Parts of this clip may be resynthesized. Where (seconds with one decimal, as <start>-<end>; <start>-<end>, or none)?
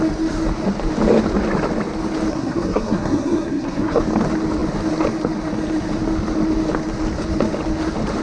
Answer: 2.3-4.0